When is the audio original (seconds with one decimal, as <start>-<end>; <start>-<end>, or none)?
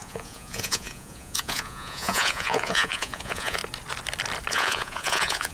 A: 3.6-4.5